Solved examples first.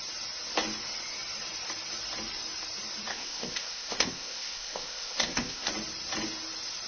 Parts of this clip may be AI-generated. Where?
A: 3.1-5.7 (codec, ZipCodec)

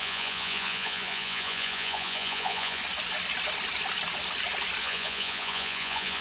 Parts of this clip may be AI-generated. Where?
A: 0.0-2.8 (vocoder, Vocos); 4.8-6.2

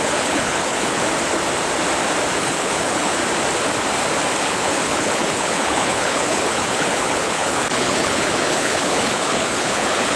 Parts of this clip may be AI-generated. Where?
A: 0.0-1.0 (codec, HILCodec); 2.4-3.2; 4.4-10.2

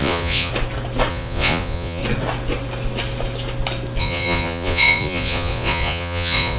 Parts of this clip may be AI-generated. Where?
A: 0.0-0.5 (vocoder, Vocos); 1.1-2.0; 4.0-6.6